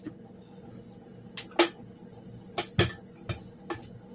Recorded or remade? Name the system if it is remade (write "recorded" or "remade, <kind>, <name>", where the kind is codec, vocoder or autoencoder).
recorded